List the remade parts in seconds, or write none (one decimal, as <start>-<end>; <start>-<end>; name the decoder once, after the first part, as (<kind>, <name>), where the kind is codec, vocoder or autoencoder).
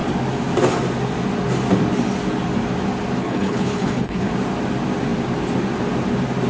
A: 3.2-4.3 (codec, HILCodec)